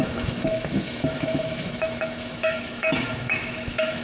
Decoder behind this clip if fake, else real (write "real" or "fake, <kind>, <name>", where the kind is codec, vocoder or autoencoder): fake, autoencoder, DAC-VAE